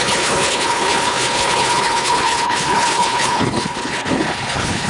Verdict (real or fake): fake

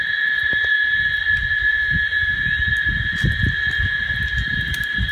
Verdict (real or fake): real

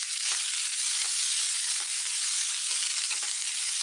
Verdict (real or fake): fake